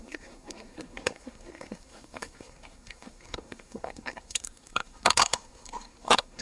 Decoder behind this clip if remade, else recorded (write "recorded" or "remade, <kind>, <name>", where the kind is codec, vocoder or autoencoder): remade, codec, SNAC